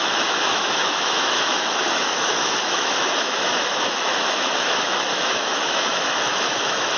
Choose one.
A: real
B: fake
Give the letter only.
B